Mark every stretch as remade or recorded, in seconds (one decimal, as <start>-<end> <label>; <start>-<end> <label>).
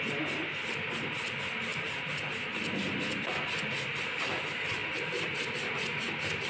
0.0-6.5 recorded